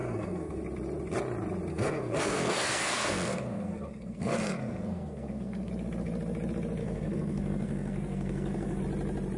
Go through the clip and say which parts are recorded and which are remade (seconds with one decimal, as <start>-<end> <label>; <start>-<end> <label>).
0.0-0.6 remade; 0.6-1.7 recorded; 1.7-5.7 remade; 5.7-6.8 recorded; 6.8-8.8 remade; 8.8-9.4 recorded